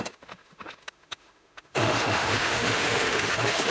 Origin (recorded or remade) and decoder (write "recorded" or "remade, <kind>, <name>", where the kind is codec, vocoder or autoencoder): remade, autoencoder, DAC-VAE